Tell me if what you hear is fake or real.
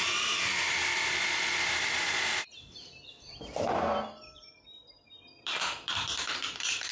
fake